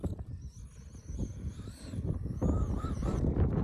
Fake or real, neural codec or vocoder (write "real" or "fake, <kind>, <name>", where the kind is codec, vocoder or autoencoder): real